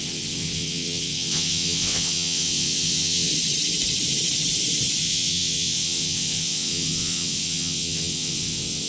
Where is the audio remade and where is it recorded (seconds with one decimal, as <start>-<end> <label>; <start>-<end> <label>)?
0.0-3.3 remade; 3.3-5.0 recorded; 5.0-8.9 remade